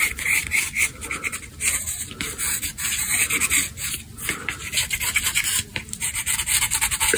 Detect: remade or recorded recorded